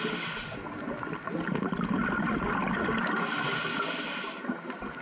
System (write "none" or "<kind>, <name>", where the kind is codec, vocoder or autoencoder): none